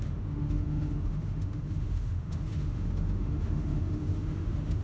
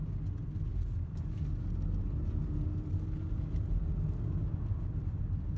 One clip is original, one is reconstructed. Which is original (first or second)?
second